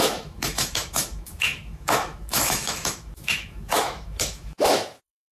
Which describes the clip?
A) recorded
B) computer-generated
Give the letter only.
B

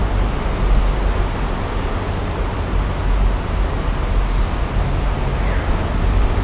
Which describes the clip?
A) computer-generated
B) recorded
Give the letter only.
B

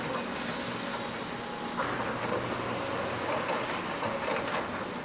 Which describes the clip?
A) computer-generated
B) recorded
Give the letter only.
B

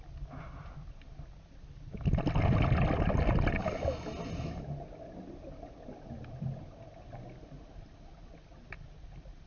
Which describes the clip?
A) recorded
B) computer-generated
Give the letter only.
A